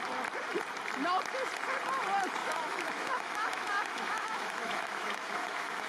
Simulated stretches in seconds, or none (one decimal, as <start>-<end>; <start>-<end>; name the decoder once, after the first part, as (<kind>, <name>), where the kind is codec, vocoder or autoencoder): 2.4-5.9 (autoencoder, DAC-VAE)